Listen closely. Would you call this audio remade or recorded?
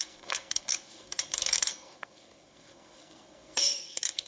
remade